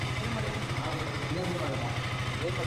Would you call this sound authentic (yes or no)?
no